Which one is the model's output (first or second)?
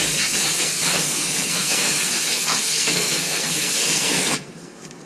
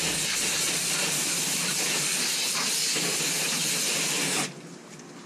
first